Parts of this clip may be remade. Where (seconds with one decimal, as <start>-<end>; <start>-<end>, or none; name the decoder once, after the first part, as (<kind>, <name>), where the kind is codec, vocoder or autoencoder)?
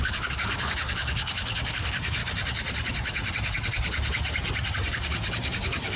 0.0-2.2 (codec, DAC)